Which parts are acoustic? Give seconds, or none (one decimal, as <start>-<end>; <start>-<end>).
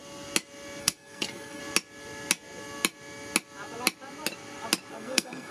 0.0-0.8; 1.6-4.9